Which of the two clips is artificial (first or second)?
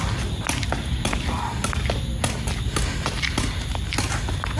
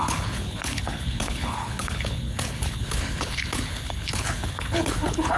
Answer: second